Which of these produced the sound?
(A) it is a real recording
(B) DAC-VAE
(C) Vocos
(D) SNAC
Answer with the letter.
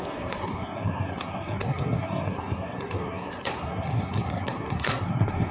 D